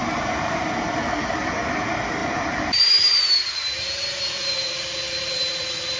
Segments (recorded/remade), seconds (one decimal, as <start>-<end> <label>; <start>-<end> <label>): 0.0-1.5 remade; 1.5-2.2 recorded; 2.2-6.0 remade

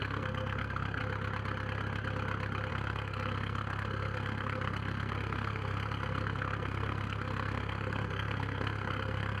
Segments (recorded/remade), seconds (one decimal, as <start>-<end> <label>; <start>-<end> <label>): 0.0-1.0 remade; 1.0-2.7 recorded; 2.7-9.4 remade

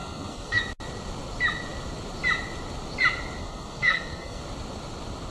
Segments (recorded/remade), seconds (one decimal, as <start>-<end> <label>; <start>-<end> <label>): 0.0-0.6 remade; 0.6-3.4 recorded; 3.4-4.4 remade; 4.4-5.3 recorded

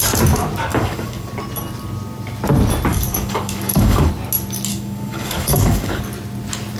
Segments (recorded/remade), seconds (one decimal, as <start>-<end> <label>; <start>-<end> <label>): 0.0-0.7 recorded; 0.7-1.3 remade; 1.3-2.9 recorded; 2.9-4.1 remade; 4.1-4.7 recorded; 4.7-6.0 remade; 6.0-6.8 recorded

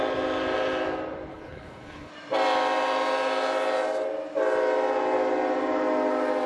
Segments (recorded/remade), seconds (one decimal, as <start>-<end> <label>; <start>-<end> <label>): 0.0-1.3 recorded; 1.3-2.1 remade; 2.1-6.5 recorded

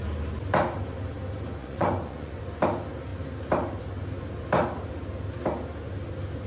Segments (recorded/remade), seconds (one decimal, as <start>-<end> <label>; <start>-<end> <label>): 0.0-1.6 recorded; 1.6-2.4 remade; 2.4-6.5 recorded

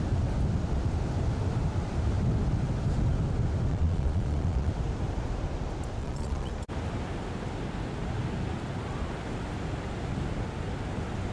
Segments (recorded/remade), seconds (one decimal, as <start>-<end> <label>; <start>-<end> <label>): 0.0-3.7 recorded; 3.7-4.7 remade; 4.7-6.0 recorded; 6.0-6.5 remade; 6.5-11.3 recorded

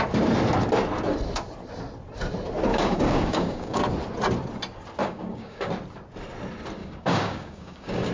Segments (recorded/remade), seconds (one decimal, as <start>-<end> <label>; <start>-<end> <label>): 0.0-2.7 recorded; 2.7-3.8 remade; 3.8-5.0 recorded; 5.0-5.7 remade; 5.7-6.8 recorded; 6.8-8.1 remade